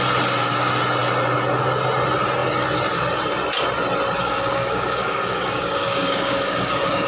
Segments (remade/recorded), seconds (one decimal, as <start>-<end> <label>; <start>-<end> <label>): 0.0-4.2 recorded; 4.2-7.1 remade